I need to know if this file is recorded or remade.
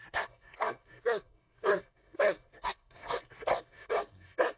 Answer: remade